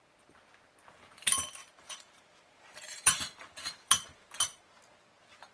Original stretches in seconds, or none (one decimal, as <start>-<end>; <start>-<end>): 0.0-1.6; 4.6-5.5